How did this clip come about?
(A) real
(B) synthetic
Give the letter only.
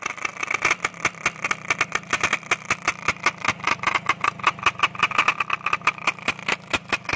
A